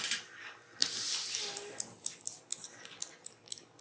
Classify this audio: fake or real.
real